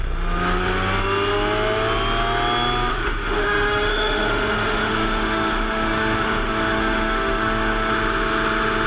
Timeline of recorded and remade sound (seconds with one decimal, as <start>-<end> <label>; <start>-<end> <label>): 0.0-2.9 recorded; 2.9-7.9 remade; 7.9-8.9 recorded